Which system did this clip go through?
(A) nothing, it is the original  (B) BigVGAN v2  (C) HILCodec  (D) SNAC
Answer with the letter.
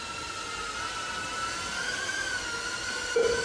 A